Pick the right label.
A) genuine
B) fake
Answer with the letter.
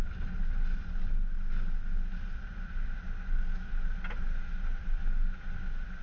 A